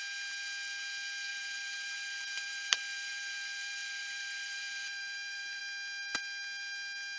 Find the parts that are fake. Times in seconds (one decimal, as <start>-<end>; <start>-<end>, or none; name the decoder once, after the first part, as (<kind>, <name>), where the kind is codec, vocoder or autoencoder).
1.3-5.6 (vocoder, BigVGAN v2)